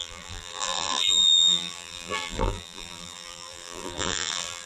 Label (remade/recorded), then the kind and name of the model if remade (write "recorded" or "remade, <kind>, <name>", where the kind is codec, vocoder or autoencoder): remade, vocoder, BigVGAN v2